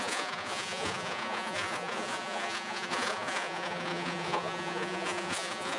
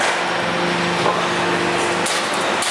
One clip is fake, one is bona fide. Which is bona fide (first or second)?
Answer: second